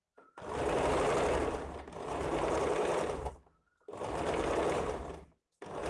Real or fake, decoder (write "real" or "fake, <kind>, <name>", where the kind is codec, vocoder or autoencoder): real